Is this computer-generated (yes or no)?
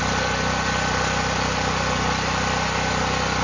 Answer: no